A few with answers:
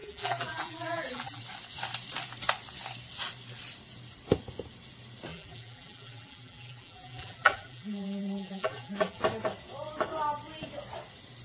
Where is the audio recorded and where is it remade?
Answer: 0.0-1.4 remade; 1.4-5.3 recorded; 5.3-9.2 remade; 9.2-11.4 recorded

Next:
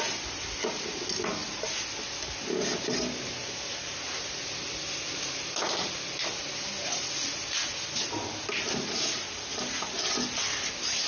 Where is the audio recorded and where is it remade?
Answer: 0.0-11.1 recorded

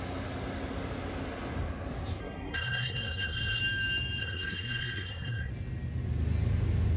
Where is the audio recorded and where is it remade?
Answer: 0.0-2.2 recorded; 2.2-3.6 remade; 3.6-4.2 recorded; 4.2-5.5 remade; 5.5-7.0 recorded

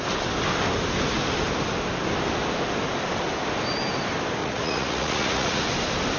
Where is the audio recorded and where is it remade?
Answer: 0.0-4.4 recorded; 4.4-5.6 remade; 5.6-6.2 recorded

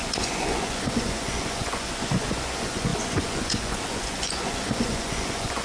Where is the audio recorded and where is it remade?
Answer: 0.0-5.6 remade

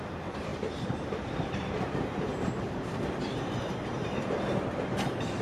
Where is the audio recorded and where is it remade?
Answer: 0.0-5.4 remade

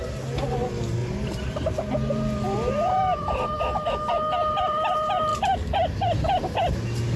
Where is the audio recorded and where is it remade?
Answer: 0.0-1.0 recorded; 1.0-1.6 remade; 1.6-7.2 recorded